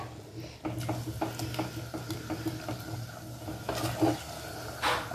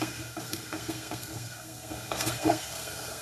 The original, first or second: first